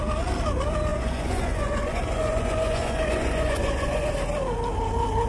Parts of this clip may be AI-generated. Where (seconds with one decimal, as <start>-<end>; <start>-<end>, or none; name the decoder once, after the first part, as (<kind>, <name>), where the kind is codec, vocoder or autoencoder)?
0.9-4.1 (vocoder, Vocos)